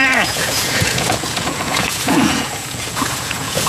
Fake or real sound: fake